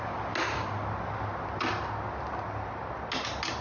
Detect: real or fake real